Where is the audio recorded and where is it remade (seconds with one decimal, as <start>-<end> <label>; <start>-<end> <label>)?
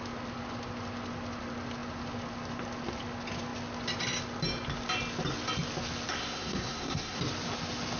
0.0-6.1 recorded; 6.1-7.2 remade; 7.2-8.0 recorded